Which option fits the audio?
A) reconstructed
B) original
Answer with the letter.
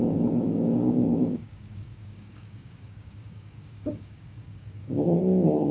A